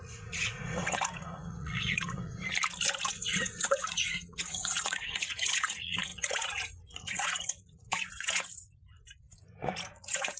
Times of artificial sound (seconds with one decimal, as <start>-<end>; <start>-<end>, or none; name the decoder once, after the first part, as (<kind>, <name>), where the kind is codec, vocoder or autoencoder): 0.0-2.3 (vocoder, Vocos); 3.1-10.4